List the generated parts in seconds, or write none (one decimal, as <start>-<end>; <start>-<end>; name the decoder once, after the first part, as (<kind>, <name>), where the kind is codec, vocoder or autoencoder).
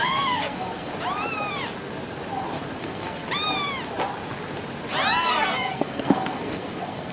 0.0-0.9 (codec, SNAC); 2.8-3.2; 5.2-7.1